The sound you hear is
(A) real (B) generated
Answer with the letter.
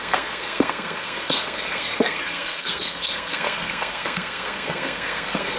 B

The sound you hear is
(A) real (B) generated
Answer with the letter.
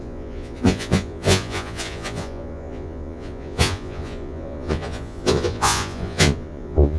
B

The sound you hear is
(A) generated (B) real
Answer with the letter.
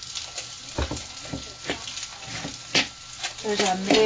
B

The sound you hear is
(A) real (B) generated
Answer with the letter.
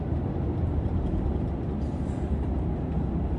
A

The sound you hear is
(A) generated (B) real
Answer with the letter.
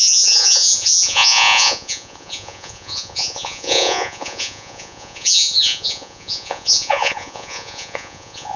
A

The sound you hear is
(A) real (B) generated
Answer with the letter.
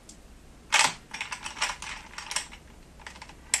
A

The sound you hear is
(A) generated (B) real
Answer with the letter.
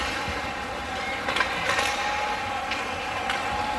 B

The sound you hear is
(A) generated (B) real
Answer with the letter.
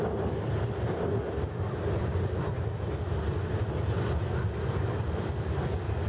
B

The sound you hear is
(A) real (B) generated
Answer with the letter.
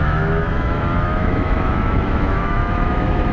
B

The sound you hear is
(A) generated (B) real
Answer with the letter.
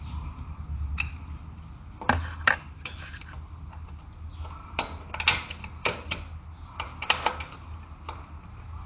B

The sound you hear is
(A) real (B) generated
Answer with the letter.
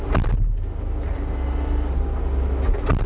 A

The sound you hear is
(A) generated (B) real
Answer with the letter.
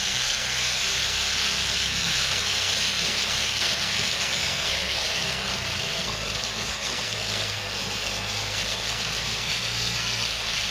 A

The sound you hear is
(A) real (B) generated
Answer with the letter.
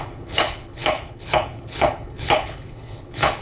B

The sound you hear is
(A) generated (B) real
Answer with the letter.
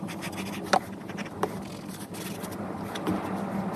B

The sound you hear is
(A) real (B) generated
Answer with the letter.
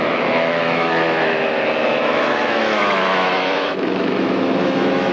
B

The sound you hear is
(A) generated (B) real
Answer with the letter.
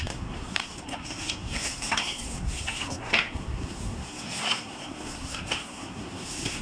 A